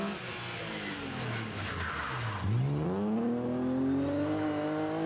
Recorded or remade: recorded